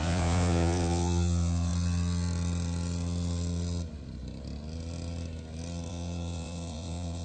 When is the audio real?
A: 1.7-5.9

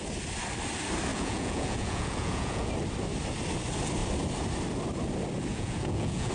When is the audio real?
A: 0.0-1.1; 2.7-5.5